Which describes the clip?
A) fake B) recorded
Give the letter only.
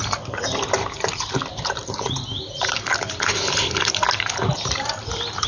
B